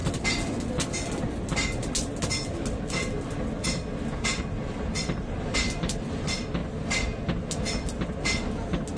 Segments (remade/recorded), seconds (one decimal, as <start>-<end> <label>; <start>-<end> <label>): 0.0-4.4 recorded; 4.4-6.6 remade; 6.6-9.0 recorded